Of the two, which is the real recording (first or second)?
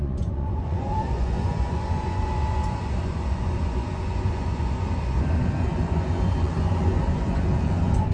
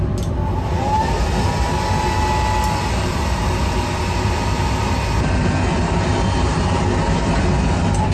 second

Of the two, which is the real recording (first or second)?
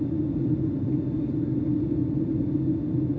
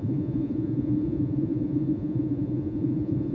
first